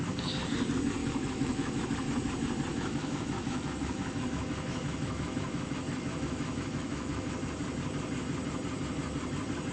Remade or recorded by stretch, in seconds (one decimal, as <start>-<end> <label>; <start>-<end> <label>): 0.0-1.0 recorded; 1.0-1.9 remade; 1.9-2.7 recorded; 2.7-7.4 remade; 7.4-9.7 recorded